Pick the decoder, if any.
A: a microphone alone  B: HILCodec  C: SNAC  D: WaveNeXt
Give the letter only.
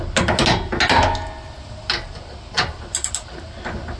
A